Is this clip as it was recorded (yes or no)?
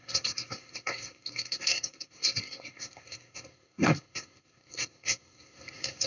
no